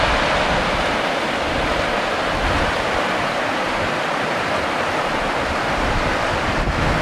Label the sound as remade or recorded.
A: recorded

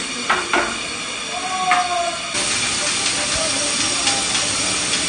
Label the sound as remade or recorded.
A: recorded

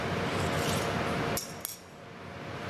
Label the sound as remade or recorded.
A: recorded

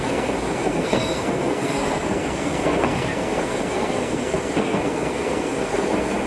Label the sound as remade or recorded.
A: remade